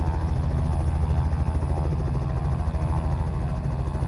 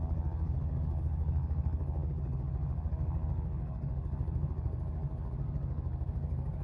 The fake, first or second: second